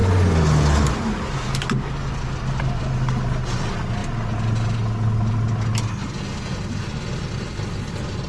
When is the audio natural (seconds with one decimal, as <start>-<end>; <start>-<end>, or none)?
0.0-8.3